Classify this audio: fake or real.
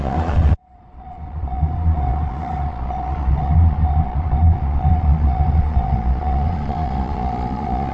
fake